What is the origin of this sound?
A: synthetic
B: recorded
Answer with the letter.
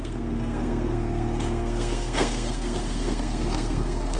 A